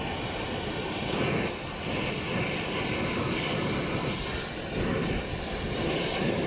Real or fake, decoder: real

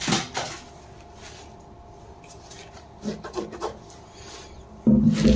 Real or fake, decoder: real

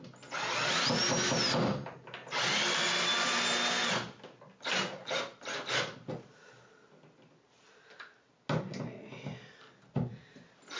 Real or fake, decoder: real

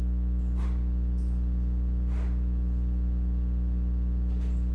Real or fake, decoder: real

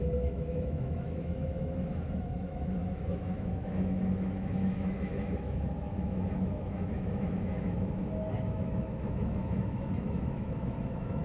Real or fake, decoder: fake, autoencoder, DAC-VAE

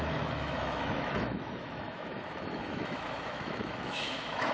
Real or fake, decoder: fake, autoencoder, DAC-VAE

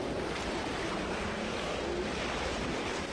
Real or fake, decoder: real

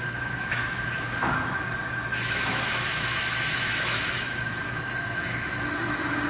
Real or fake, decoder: fake, autoencoder, DAC-VAE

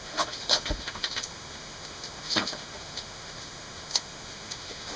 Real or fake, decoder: fake, autoencoder, DAC-VAE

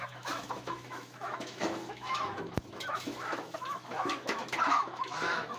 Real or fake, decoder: fake, autoencoder, DAC-VAE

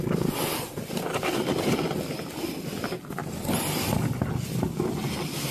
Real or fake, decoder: real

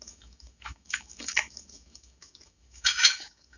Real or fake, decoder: fake, autoencoder, DAC-VAE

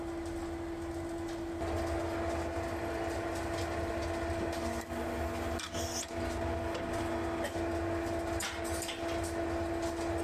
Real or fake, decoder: real